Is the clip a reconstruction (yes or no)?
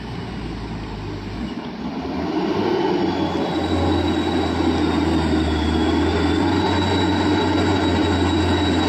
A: no